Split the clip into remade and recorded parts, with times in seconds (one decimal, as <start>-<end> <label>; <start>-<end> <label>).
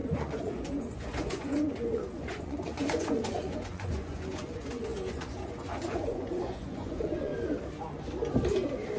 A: 0.0-7.3 remade; 7.3-9.0 recorded